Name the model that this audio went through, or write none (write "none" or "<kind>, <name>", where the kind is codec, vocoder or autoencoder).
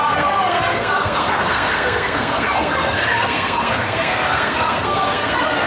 codec, SNAC